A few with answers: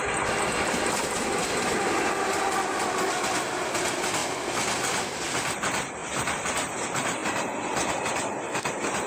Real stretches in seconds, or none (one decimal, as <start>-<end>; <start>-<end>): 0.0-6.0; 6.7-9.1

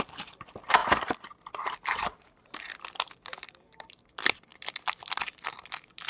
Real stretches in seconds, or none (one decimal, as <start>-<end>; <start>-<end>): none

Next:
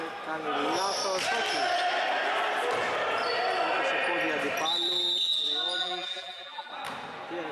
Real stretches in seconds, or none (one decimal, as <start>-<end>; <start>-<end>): 0.0-5.8; 6.7-7.5